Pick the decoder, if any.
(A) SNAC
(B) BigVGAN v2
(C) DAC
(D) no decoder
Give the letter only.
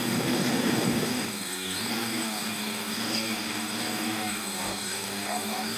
C